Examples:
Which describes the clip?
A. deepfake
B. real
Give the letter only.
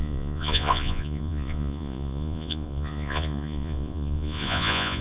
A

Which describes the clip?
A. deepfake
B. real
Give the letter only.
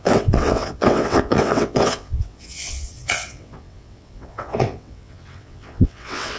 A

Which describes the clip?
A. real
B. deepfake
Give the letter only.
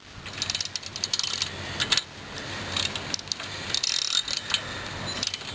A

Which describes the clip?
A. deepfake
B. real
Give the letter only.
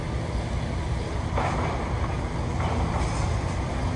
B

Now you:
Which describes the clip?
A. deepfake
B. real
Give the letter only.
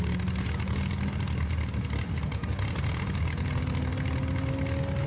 B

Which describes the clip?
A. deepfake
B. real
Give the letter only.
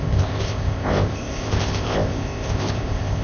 A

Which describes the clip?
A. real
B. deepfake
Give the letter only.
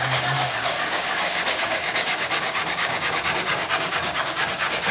B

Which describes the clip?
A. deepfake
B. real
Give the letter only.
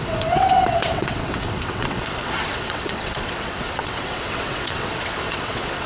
A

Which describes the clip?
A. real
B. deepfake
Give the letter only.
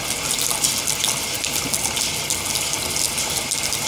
A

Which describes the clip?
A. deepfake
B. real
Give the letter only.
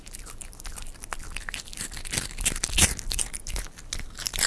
B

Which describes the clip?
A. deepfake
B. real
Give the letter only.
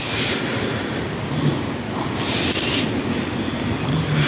B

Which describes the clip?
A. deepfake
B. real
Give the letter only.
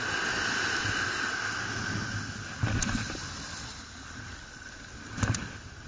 B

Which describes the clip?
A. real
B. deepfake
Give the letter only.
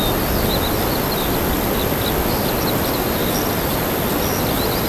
A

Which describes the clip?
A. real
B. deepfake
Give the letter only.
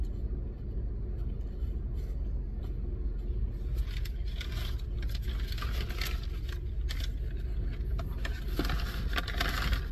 A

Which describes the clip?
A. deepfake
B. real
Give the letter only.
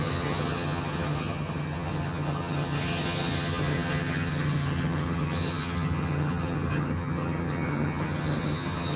A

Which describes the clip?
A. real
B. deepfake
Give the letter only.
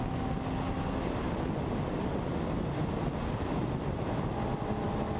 A